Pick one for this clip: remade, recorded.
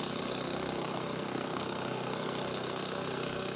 remade